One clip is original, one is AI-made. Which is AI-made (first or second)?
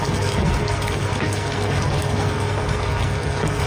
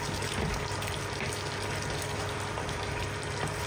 first